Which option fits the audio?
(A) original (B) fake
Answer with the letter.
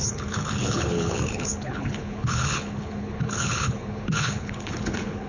B